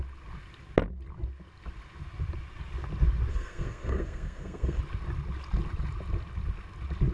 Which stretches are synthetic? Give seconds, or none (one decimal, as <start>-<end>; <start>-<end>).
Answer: 3.3-4.8